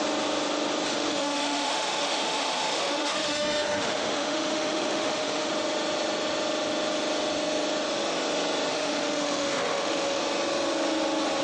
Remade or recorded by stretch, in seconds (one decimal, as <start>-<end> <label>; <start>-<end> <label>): 0.0-0.9 recorded; 0.9-5.5 remade; 5.5-8.7 recorded; 8.7-10.2 remade; 10.2-11.4 recorded